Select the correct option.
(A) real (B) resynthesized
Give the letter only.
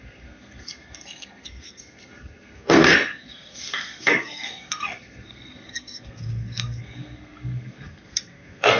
B